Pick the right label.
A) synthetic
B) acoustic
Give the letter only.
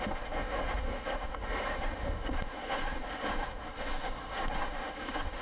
A